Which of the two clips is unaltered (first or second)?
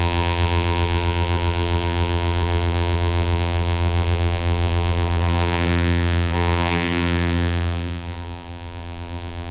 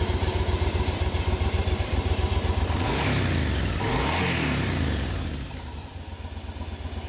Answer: second